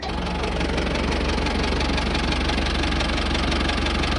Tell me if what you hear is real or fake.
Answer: real